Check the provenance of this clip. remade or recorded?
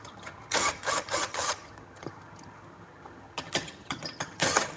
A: remade